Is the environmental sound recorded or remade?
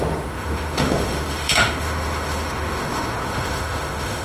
remade